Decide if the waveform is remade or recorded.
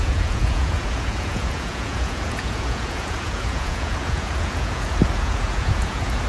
remade